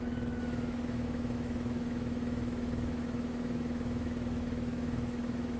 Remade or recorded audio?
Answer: remade